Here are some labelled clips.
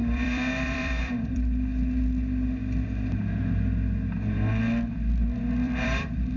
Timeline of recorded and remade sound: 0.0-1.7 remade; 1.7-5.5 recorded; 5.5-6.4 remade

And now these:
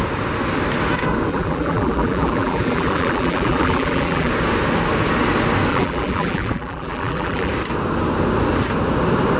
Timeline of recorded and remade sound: 0.0-1.3 recorded; 1.3-4.3 remade; 4.3-5.7 recorded; 5.7-7.5 remade; 7.5-9.4 recorded